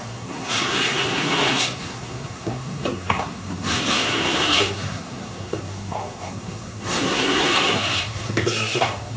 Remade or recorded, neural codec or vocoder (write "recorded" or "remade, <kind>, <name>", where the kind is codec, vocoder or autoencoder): remade, codec, SNAC